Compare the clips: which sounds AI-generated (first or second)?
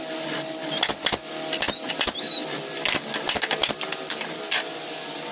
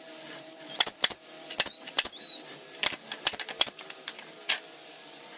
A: second